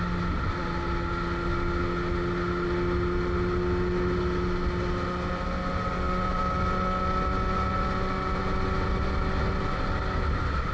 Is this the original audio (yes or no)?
yes